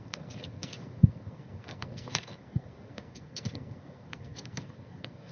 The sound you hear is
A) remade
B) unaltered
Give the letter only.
A